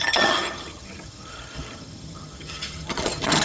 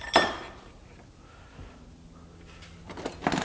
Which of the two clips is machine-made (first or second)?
first